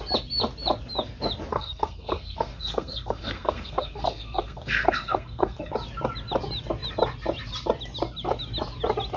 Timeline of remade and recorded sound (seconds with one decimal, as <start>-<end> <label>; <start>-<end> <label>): 0.0-1.5 recorded; 1.5-5.7 remade; 5.7-9.2 recorded